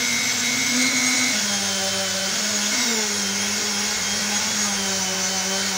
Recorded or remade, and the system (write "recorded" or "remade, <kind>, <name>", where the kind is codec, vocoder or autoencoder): recorded